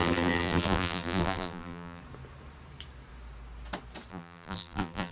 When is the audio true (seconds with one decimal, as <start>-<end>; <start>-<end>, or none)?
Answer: 2.0-4.1